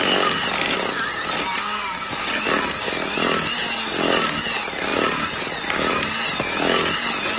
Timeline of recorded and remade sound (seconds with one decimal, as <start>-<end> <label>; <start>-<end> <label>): 0.0-7.4 recorded